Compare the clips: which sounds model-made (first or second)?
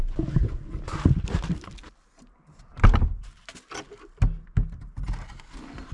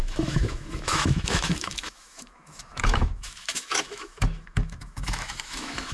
second